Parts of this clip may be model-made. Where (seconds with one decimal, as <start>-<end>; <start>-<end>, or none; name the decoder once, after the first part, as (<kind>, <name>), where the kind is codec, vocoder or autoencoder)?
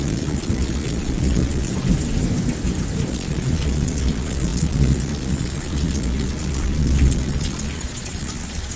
0.0-1.7 (vocoder, Vocos); 3.1-8.8